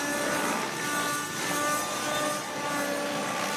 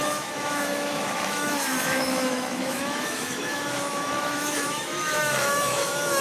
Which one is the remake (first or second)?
second